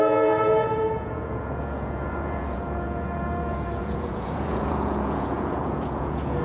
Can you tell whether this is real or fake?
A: fake